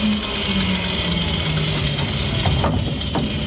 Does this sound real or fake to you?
real